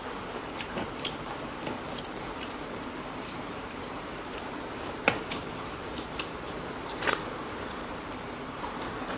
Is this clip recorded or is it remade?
remade